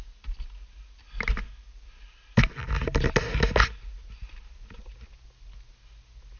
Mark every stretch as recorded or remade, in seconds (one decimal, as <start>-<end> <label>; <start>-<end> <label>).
0.0-6.4 recorded